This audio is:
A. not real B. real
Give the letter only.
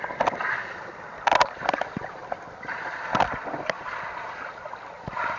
B